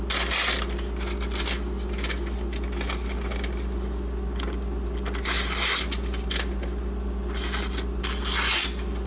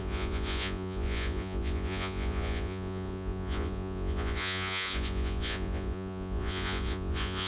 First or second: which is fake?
second